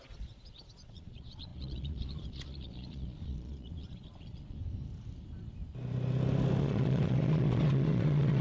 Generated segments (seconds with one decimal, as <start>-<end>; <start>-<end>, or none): 0.0-4.6; 6.6-8.4